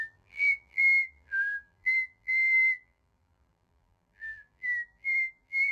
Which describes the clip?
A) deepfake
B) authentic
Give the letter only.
A